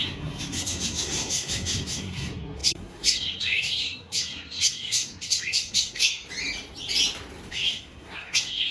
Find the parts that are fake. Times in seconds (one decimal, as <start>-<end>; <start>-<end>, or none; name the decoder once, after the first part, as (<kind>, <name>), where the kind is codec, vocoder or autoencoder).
0.0-6.2 (codec, SNAC); 7.5-8.7